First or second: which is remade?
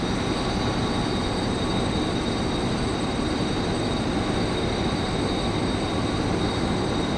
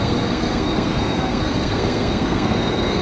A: second